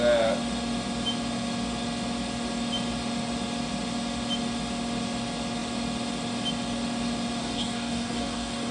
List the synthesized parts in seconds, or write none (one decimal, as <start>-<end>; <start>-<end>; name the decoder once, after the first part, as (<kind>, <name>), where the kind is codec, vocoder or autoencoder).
7.4-8.7 (codec, DAC)